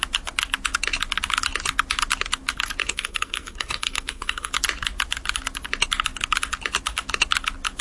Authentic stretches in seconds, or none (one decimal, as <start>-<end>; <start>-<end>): 0.0-2.8; 4.5-7.8